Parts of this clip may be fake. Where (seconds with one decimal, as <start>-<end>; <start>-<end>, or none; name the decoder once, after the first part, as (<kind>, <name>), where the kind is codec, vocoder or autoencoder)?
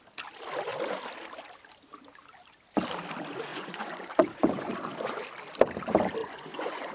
3.5-4.7 (vocoder, Vocos); 6.2-6.9